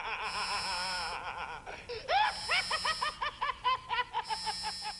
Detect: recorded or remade recorded